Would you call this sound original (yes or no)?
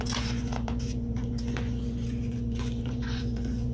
no